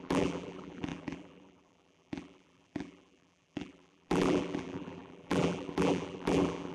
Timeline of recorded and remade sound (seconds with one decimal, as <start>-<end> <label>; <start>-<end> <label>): 0.0-6.7 remade